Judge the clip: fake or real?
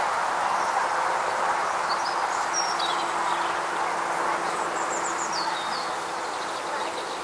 real